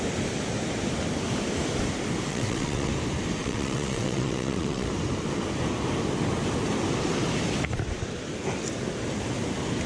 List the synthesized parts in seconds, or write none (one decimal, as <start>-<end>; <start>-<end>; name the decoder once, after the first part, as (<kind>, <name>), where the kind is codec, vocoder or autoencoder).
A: 2.3-2.9 (vocoder, WaveNeXt); 3.4-4.9